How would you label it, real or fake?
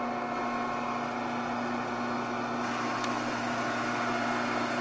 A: real